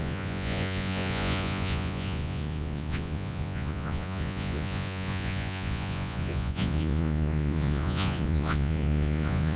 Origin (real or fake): fake